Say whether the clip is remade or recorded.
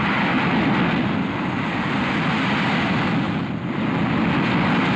recorded